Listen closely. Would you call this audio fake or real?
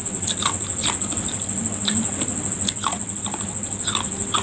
real